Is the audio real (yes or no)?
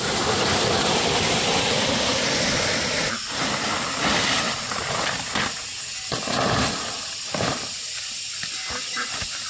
yes